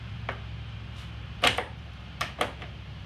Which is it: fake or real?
fake